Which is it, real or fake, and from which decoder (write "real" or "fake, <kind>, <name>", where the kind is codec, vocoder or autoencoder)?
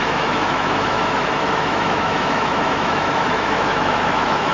fake, autoencoder, DAC-VAE